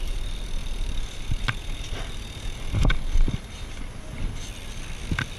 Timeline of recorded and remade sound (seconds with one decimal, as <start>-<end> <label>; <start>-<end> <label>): 0.0-5.4 recorded